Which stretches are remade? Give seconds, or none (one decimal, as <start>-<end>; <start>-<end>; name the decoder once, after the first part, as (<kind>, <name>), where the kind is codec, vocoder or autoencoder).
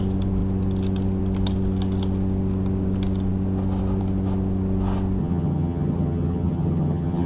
5.2-7.3 (vocoder, HiFi-GAN)